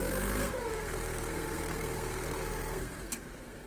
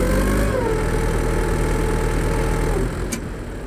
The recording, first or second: second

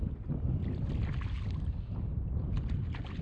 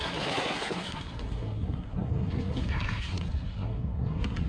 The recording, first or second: first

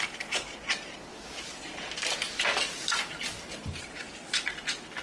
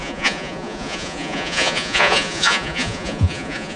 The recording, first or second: first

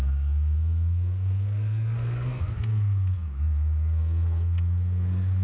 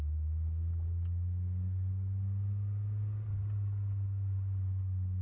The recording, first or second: second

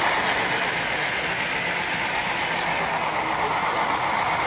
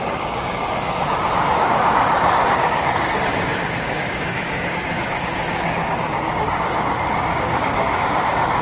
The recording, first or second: first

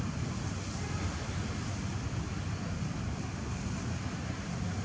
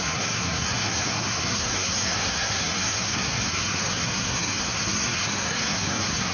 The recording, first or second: first